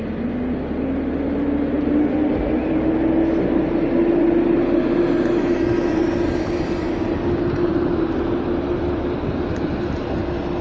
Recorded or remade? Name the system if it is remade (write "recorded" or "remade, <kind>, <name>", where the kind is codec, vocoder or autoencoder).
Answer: recorded